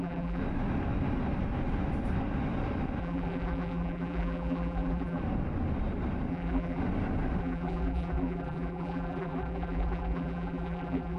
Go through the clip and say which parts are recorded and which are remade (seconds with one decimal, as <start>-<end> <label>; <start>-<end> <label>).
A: 0.0-0.4 remade; 0.4-3.0 recorded; 3.0-5.2 remade; 5.2-6.3 recorded; 6.3-6.8 remade; 6.8-7.4 recorded; 7.4-11.2 remade